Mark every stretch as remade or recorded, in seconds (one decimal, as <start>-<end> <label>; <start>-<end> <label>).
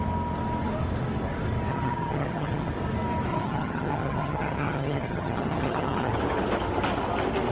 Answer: 0.0-1.7 recorded; 1.7-2.7 remade; 2.7-3.3 recorded; 3.3-6.1 remade; 6.1-7.5 recorded